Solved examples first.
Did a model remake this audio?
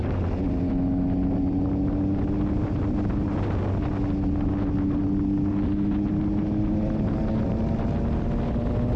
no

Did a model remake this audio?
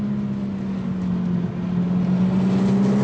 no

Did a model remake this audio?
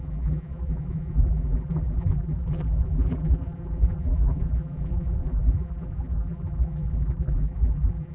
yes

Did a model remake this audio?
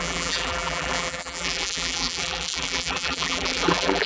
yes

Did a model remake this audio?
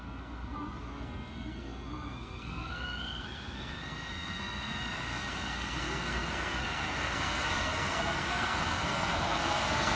yes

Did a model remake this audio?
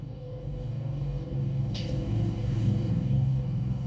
yes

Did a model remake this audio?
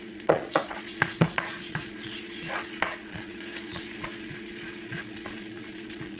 yes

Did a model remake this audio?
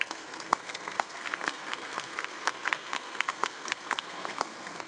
yes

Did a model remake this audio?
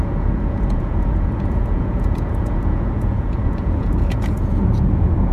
yes